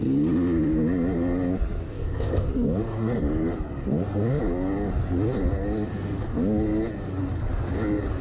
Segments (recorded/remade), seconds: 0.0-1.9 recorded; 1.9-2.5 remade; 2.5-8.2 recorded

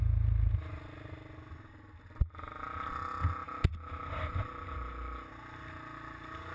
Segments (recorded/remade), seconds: 0.0-6.5 recorded

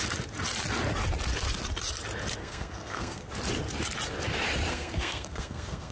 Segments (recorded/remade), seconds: 0.0-2.4 recorded; 2.4-3.3 remade; 3.3-4.7 recorded; 4.7-5.9 remade

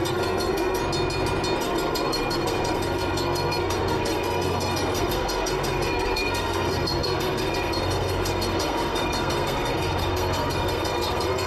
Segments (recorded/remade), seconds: 0.0-0.8 remade; 0.8-1.6 recorded; 1.6-11.5 remade

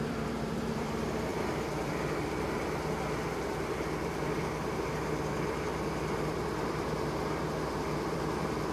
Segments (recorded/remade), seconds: 0.0-8.7 remade

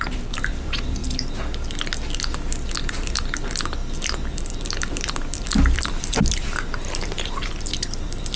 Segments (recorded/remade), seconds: 0.0-1.0 remade; 1.0-2.9 recorded; 2.9-8.4 remade